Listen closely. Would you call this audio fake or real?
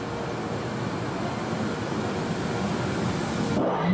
real